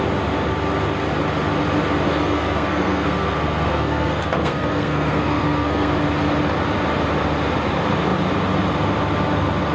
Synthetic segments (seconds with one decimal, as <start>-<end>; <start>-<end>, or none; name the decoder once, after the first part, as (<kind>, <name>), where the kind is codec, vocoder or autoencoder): 2.1-5.9 (codec, SNAC)